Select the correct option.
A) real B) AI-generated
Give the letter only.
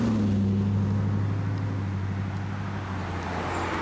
A